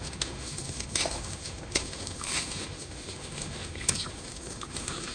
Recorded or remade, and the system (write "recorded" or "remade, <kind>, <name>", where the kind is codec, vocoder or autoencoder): remade, autoencoder, DAC-VAE